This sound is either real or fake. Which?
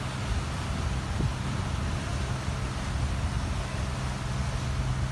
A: real